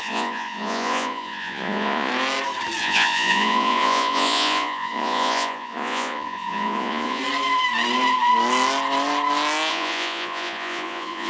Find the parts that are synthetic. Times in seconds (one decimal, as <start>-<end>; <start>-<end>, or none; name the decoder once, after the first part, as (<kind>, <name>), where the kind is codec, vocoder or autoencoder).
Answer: 0.0-2.1 (vocoder, Vocos); 2.8-7.2; 9.7-11.3

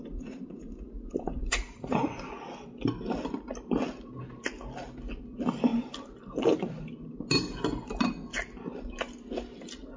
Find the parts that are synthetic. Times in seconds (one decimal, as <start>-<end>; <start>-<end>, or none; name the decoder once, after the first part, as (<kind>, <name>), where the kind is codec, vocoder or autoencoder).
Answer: 0.0-2.3 (vocoder, Vocos)

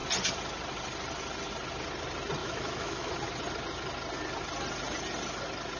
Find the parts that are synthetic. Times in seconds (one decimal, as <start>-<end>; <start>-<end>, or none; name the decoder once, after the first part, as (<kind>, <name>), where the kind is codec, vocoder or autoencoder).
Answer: 2.4-3.1 (autoencoder, DAC-VAE)

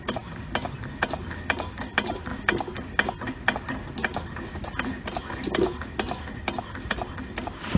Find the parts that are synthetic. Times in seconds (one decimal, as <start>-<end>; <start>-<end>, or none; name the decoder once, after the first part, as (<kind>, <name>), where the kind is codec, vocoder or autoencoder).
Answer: none